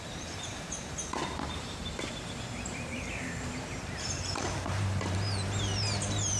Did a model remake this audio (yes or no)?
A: yes